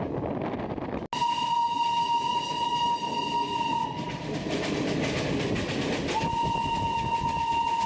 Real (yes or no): yes